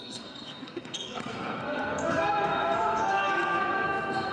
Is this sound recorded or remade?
remade